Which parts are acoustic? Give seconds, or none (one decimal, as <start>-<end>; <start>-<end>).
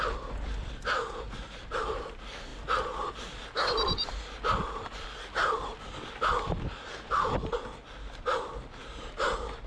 0.0-8.8